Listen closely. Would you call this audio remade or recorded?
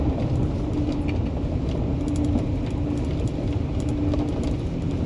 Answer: recorded